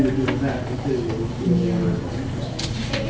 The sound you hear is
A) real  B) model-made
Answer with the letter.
A